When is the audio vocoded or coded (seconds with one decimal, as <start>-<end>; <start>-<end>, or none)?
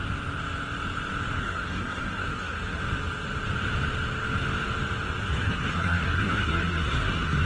1.4-2.8; 5.2-7.5